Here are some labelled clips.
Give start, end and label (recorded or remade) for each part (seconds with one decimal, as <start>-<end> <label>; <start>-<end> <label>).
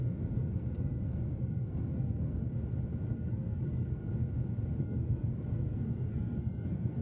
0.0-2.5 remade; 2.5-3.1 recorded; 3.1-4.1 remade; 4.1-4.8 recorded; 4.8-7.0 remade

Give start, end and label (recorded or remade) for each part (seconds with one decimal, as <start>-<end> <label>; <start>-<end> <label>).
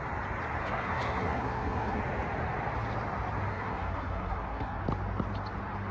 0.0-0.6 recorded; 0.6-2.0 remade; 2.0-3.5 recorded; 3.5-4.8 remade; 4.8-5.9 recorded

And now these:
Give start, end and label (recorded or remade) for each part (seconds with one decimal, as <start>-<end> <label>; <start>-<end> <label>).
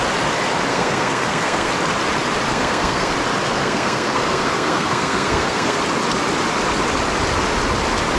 0.0-0.7 recorded; 0.7-1.7 remade; 1.7-2.5 recorded; 2.5-3.1 remade; 3.1-3.6 recorded; 3.6-5.8 remade; 5.8-8.2 recorded